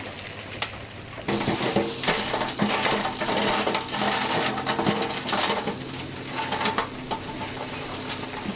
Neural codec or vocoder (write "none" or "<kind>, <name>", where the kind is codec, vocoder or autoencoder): none